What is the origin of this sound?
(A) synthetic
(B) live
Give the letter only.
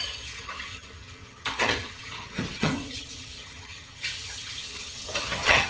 A